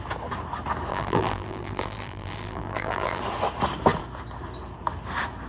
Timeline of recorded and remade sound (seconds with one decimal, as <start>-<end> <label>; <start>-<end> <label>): 0.0-0.9 recorded; 0.9-3.2 remade; 3.2-5.5 recorded